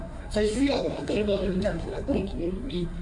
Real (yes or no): no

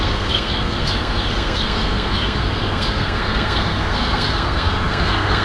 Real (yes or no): no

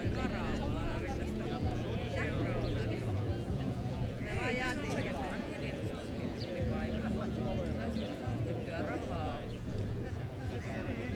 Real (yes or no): no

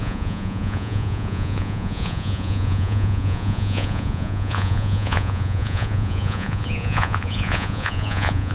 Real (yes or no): no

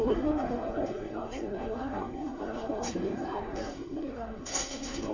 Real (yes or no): no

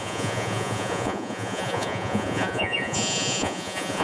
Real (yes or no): no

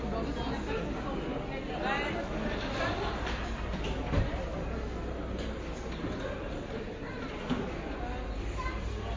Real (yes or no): yes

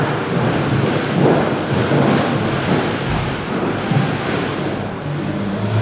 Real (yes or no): yes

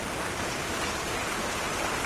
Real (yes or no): yes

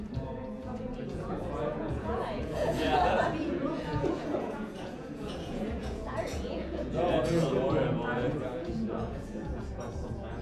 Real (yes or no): no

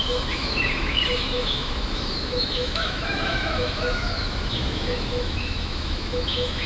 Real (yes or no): no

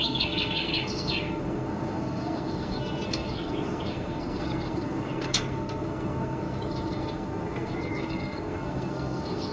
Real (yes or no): no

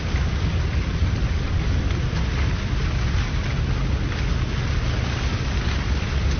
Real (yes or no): yes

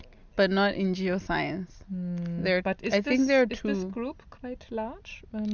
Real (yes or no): yes